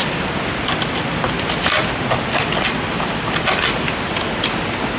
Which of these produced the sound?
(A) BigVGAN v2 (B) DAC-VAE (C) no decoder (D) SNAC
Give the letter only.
C